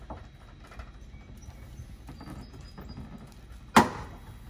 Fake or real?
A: real